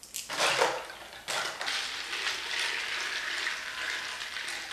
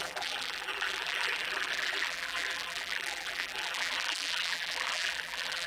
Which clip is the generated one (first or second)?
second